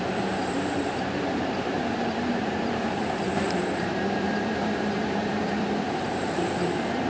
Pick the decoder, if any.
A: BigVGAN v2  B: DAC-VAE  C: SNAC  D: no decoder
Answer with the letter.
A